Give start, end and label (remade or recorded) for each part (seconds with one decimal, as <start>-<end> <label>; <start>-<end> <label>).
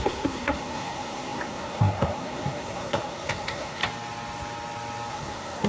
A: 0.0-3.8 remade; 3.8-5.1 recorded; 5.1-5.7 remade